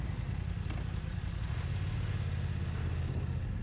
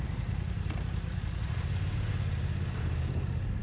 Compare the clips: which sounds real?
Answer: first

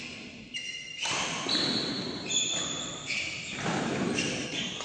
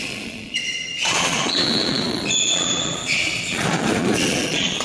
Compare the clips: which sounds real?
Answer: first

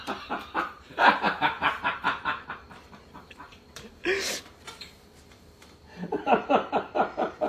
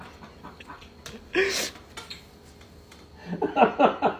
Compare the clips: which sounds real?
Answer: second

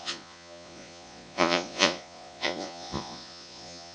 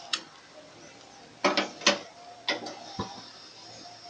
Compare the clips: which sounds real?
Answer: second